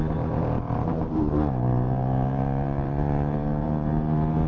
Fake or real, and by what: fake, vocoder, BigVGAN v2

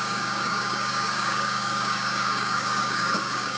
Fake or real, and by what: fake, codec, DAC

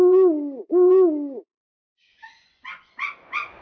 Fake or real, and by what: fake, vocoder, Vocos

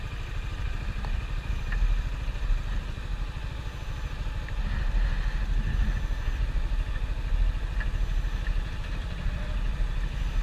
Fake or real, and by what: real